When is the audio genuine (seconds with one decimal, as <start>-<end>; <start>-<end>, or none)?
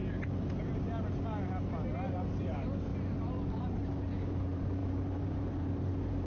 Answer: 0.0-2.4; 2.9-3.5